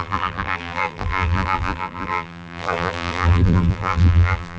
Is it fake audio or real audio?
fake